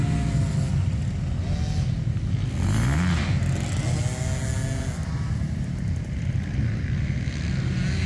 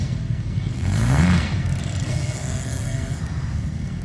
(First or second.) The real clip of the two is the first